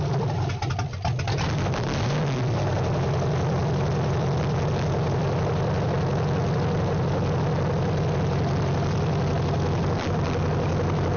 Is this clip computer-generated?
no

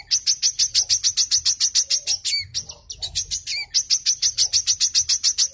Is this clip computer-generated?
no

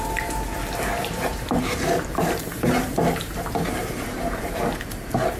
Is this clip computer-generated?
yes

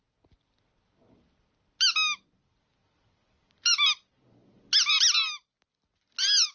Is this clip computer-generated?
no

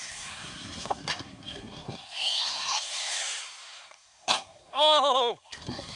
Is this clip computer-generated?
yes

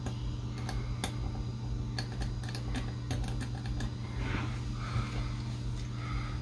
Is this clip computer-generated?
no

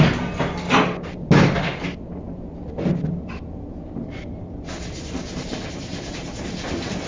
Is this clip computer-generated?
no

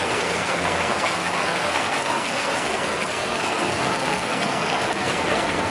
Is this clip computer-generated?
yes